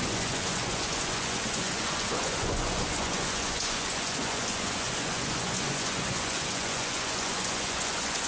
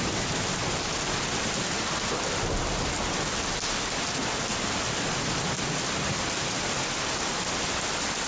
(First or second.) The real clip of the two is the second